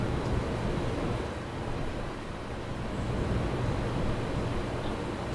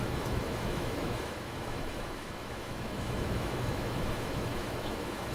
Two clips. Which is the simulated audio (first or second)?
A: second